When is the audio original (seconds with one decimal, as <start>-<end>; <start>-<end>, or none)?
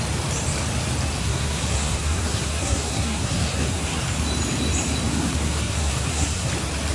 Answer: 0.0-1.2; 4.0-5.1; 6.5-6.9